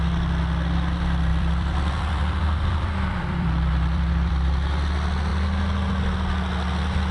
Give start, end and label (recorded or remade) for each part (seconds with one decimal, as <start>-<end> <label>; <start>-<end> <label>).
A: 0.0-1.3 recorded; 1.3-4.3 remade; 4.3-7.1 recorded